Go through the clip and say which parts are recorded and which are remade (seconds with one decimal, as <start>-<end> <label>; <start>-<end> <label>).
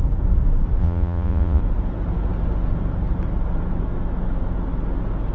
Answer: 0.0-0.8 recorded; 0.8-1.6 remade; 1.6-5.3 recorded